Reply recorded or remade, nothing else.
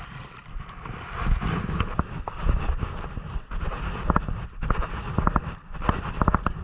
recorded